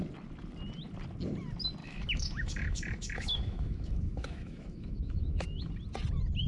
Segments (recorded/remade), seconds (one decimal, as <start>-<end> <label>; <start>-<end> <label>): 0.0-1.8 recorded; 1.8-5.7 remade; 5.7-6.5 recorded